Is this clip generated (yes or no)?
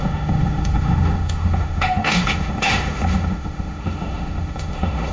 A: yes